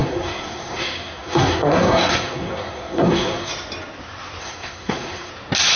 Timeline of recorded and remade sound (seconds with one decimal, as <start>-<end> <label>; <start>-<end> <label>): 0.0-3.5 remade; 3.5-4.4 recorded; 4.4-5.3 remade; 5.3-5.8 recorded